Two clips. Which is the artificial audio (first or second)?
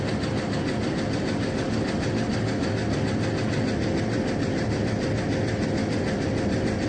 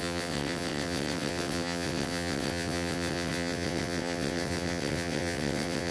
second